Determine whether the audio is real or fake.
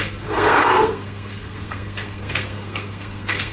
fake